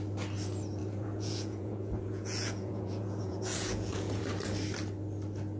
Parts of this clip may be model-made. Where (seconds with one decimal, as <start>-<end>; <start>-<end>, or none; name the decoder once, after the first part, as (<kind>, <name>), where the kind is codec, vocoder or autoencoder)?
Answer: 0.8-4.2 (vocoder, Vocos)